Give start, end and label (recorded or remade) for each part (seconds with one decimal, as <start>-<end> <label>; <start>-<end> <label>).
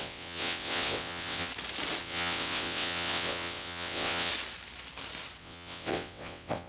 0.0-1.5 remade; 1.5-2.0 recorded; 2.0-4.3 remade; 4.3-5.4 recorded; 5.4-6.7 remade